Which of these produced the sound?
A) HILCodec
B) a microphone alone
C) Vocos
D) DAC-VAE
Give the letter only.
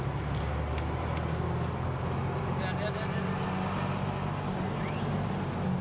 B